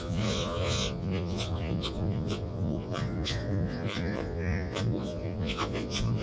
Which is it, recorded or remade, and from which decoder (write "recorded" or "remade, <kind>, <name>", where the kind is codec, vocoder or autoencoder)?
remade, vocoder, Vocos